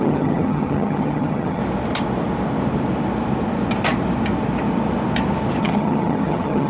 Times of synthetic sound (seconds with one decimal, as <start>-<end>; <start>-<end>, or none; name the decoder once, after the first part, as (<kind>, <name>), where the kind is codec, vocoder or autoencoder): 0.0-1.6 (vocoder, HiFi-GAN); 5.6-6.7